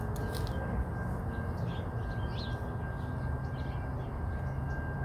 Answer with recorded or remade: recorded